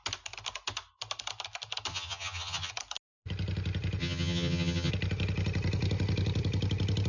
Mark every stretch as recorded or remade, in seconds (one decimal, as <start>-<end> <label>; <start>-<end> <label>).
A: 0.0-1.9 recorded; 1.9-2.7 remade; 2.7-4.0 recorded; 4.0-4.9 remade; 4.9-7.1 recorded